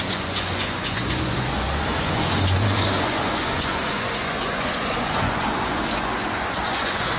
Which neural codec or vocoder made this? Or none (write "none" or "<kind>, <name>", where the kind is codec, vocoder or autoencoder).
vocoder, Vocos